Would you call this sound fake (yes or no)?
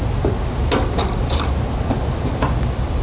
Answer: no